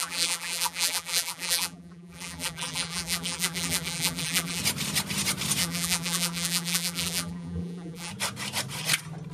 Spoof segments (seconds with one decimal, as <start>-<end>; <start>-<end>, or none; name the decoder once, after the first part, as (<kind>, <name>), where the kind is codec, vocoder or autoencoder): 0.0-4.6 (vocoder, BigVGAN v2); 5.6-8.1